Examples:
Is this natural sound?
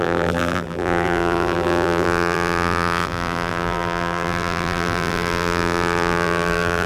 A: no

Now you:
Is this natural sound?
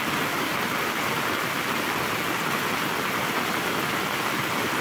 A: yes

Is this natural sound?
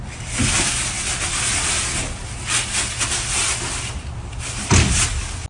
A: yes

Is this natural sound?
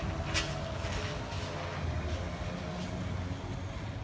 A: yes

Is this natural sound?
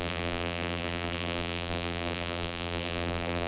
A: no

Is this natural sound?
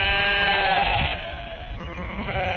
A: no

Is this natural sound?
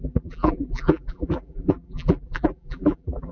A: no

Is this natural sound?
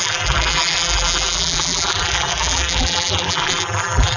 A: no